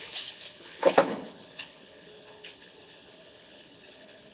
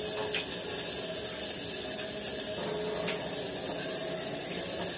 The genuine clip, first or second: second